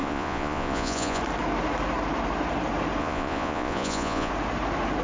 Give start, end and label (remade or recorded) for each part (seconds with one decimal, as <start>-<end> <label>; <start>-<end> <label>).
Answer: 0.0-1.2 remade; 1.2-3.0 recorded; 3.0-4.3 remade; 4.3-5.0 recorded